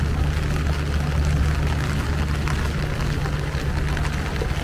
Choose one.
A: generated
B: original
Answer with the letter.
B